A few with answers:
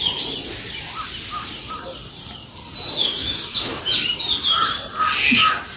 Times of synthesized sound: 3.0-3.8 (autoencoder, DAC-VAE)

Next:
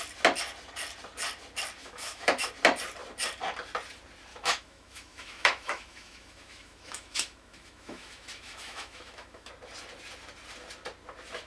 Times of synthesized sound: 1.8-2.5 (autoencoder, DAC-VAE); 4.3-9.5

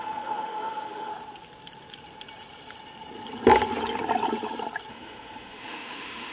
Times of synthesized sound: 0.0-1.1 (autoencoder, DAC-VAE); 4.9-6.3